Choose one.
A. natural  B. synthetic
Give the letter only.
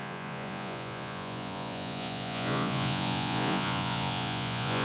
B